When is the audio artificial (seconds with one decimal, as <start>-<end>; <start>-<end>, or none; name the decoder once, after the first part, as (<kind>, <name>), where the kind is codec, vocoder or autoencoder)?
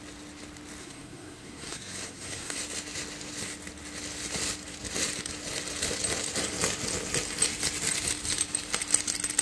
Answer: 0.8-2.6 (codec, SNAC)